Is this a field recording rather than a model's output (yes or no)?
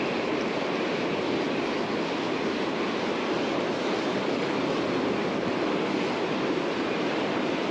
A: yes